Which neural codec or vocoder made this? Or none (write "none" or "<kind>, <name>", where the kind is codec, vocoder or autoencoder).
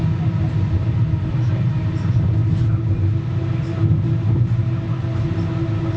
none